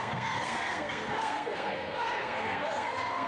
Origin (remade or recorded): remade